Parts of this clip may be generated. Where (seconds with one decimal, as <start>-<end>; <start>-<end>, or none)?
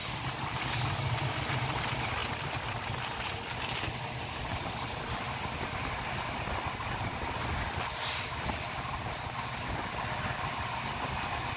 0.0-1.4